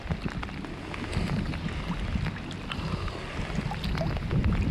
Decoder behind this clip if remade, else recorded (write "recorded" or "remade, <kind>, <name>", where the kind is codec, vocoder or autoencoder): recorded